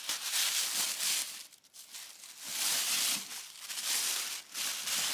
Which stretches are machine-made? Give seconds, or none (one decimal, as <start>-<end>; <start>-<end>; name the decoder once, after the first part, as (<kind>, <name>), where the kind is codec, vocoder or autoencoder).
0.0-1.2 (vocoder, BigVGAN v2); 4.3-5.1